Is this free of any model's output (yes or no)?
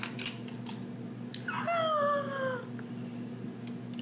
yes